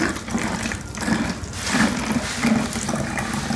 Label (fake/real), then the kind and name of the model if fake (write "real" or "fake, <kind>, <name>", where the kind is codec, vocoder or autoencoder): real